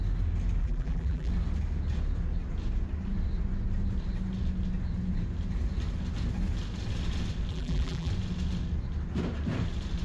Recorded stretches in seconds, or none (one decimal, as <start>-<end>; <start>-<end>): 0.0-0.6; 1.3-7.5; 8.1-10.0